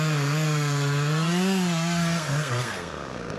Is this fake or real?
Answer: fake